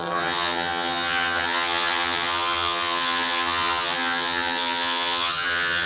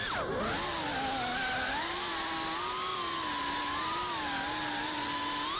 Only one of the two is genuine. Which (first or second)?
second